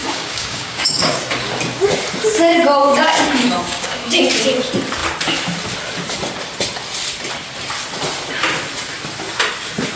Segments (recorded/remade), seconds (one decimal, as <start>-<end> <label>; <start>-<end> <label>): 0.0-1.2 remade; 1.2-2.8 recorded; 2.8-4.2 remade; 4.2-10.0 recorded